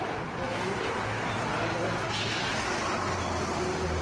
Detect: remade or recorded recorded